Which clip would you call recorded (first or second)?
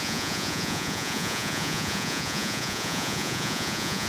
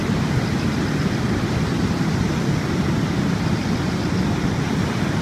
second